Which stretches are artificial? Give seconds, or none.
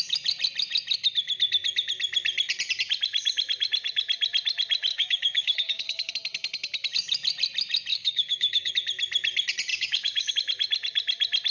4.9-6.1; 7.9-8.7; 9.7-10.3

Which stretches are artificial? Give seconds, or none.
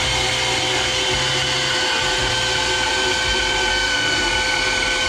3.7-4.3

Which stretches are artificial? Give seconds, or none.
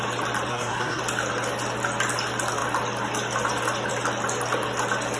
0.5-1.0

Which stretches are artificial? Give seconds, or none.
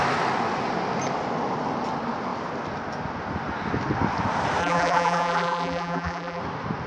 4.6-6.4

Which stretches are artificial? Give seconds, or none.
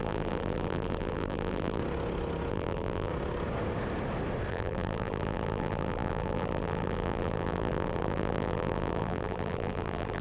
0.0-1.8; 2.5-3.1; 4.5-10.2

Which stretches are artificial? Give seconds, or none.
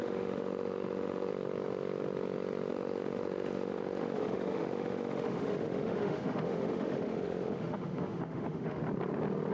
0.0-1.3; 2.7-8.8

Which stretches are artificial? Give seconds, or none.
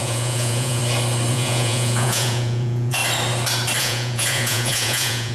0.0-0.8; 1.3-3.0; 3.8-5.3